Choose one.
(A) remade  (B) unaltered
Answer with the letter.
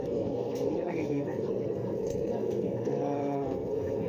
A